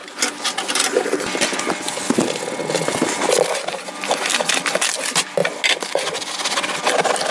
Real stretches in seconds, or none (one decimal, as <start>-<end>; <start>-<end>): 0.0-7.3